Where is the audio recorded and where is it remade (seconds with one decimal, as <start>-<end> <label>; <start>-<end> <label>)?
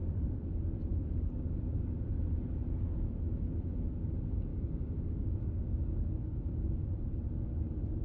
0.0-0.9 recorded; 0.9-1.5 remade; 1.5-4.5 recorded; 4.5-6.2 remade; 6.2-8.0 recorded